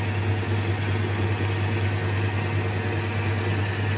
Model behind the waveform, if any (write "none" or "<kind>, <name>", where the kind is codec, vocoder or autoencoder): none